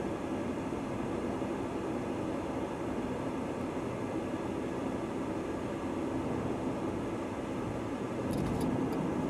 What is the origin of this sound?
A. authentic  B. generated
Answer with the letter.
A